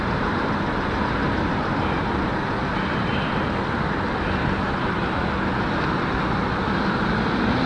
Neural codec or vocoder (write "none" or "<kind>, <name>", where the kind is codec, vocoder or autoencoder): vocoder, BigVGAN v2